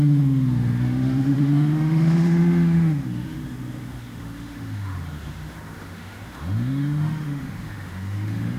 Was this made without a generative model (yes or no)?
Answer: no